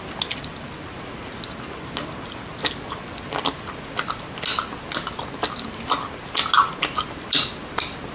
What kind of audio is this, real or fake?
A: real